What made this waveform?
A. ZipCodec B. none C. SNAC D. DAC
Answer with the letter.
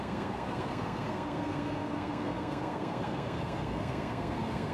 C